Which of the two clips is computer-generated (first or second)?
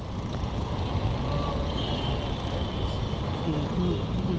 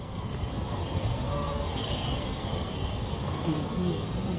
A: second